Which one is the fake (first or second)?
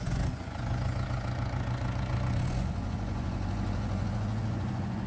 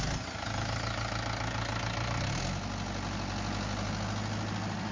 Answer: first